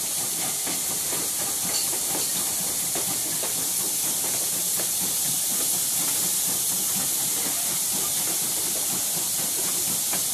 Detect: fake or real fake